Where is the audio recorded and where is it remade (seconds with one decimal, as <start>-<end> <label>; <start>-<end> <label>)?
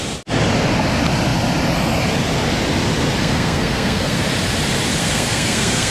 0.0-3.2 recorded; 3.2-4.2 remade; 4.2-5.0 recorded; 5.0-5.9 remade